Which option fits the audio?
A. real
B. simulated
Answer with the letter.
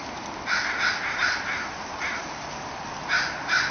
B